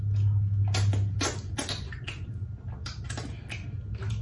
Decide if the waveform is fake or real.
real